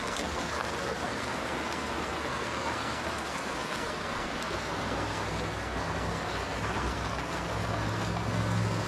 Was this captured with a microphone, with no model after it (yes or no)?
no